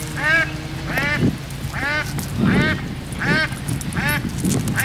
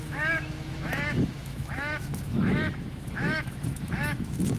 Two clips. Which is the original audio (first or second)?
first